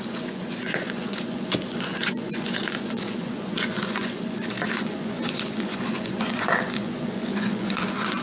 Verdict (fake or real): fake